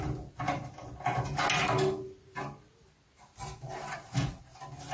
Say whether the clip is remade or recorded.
recorded